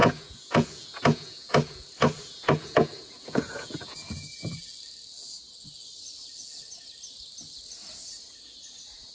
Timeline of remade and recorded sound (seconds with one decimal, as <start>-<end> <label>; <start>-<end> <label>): 0.0-4.6 remade; 4.6-9.1 recorded